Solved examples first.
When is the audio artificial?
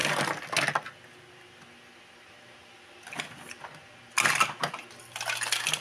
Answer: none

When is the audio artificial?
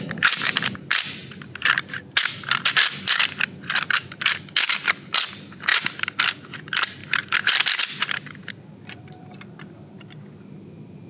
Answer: 1.2-2.0 (vocoder, BigVGAN v2)